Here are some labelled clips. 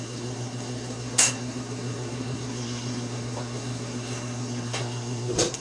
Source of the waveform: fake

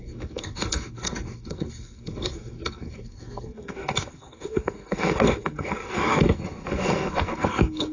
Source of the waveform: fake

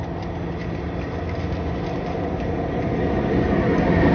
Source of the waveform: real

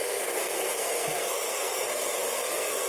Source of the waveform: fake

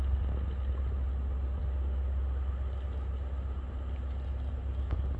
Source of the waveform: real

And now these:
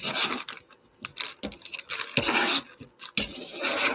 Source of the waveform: real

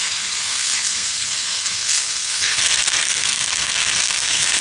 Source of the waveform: fake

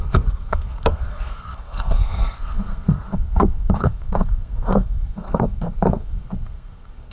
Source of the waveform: fake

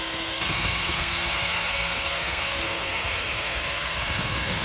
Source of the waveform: fake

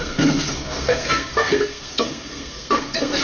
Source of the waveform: fake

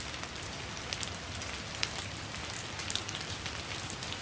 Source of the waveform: real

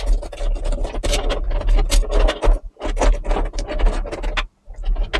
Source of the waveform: real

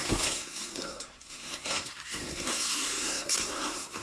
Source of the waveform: fake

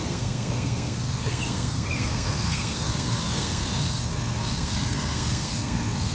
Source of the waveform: fake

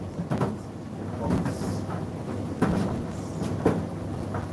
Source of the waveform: real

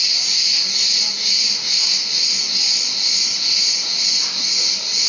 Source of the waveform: real